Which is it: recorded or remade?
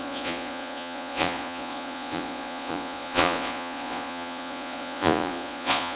remade